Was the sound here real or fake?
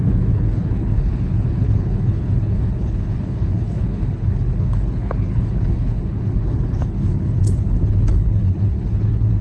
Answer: fake